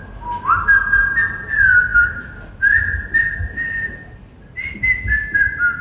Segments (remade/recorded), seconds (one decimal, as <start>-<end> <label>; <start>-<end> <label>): 0.0-5.8 recorded